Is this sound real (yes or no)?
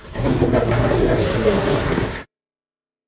no